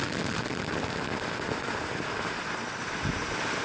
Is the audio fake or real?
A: real